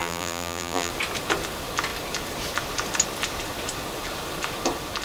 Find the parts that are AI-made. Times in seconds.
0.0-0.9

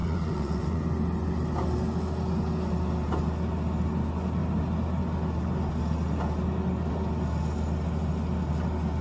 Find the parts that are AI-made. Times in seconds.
0.0-0.8

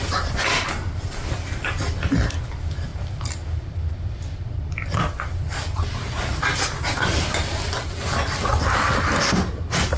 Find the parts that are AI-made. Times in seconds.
none

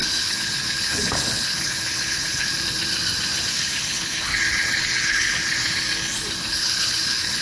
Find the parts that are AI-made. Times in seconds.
0.0-2.5; 3.5-4.3; 4.8-5.4; 6.5-7.4

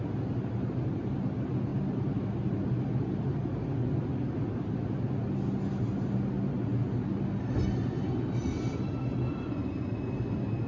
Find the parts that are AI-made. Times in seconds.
none